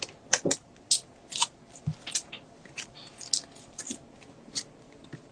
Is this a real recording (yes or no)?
yes